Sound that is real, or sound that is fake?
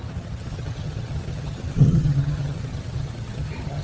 fake